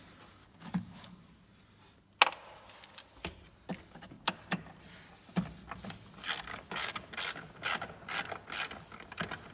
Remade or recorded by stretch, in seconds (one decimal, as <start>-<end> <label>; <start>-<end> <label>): 0.0-0.4 recorded; 0.4-1.1 remade; 1.1-3.7 recorded; 3.7-4.7 remade; 4.7-6.5 recorded; 6.5-7.1 remade; 7.1-9.5 recorded